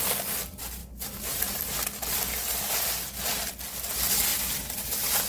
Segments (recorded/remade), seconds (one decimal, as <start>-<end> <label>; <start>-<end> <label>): 0.0-5.3 recorded